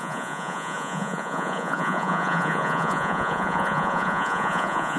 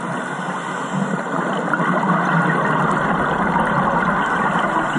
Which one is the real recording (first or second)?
second